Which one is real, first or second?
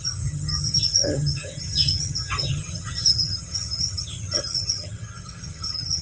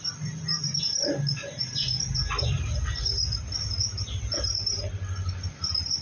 second